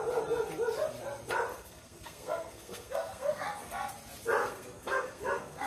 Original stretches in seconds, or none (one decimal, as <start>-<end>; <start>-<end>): 0.0-1.5; 3.9-4.4